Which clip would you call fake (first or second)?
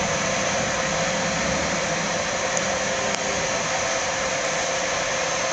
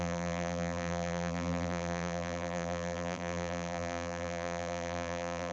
second